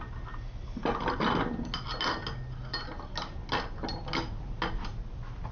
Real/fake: real